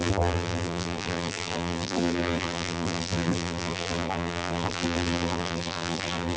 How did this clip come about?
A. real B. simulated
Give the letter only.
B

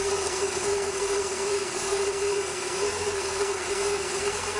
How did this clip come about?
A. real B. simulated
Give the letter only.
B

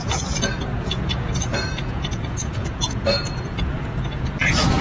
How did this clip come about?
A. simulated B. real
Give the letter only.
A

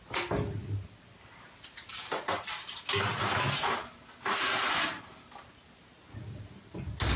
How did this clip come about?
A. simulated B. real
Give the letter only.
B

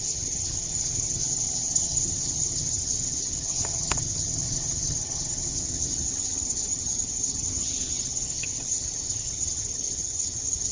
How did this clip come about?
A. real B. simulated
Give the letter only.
B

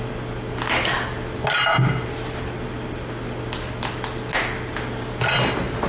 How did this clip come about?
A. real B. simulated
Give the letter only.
A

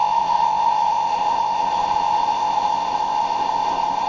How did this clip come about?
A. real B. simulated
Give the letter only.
B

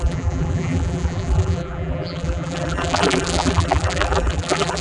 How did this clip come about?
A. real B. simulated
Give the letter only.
B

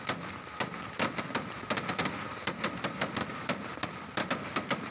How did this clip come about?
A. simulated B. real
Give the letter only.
B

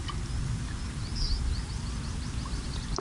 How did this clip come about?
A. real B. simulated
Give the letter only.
A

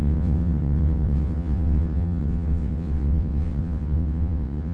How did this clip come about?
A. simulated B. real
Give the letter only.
A